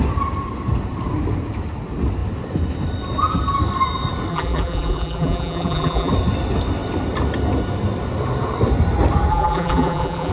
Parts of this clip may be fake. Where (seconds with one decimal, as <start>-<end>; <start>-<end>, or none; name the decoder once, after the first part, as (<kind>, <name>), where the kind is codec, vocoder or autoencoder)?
4.3-6.1 (vocoder, BigVGAN v2); 9.3-10.3